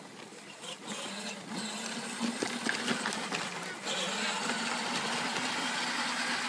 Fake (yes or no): no